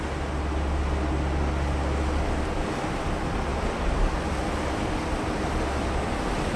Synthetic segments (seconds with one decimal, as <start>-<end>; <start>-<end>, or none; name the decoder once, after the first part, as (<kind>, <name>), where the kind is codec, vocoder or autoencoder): none